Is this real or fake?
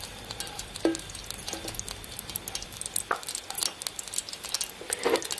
real